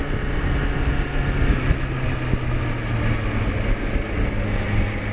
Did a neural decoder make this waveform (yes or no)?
no